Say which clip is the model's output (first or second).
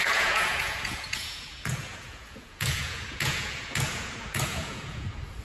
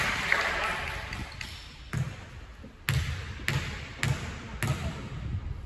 first